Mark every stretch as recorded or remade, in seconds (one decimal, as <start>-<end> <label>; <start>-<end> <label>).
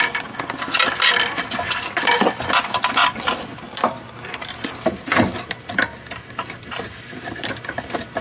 0.0-8.2 recorded